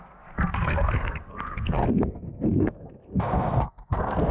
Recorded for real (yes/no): no